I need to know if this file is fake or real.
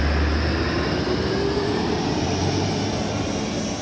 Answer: real